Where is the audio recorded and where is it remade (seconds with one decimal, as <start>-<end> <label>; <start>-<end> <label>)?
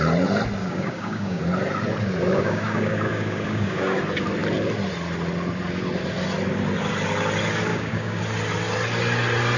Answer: 0.0-0.6 recorded; 0.6-1.4 remade; 1.4-2.3 recorded; 2.3-4.0 remade; 4.0-7.7 recorded; 7.7-8.2 remade; 8.2-9.6 recorded